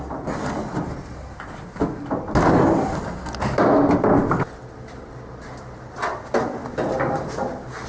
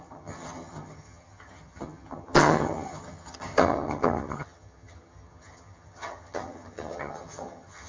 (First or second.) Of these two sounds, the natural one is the first